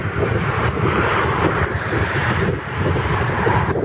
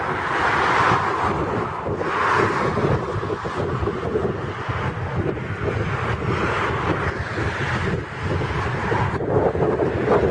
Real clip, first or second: second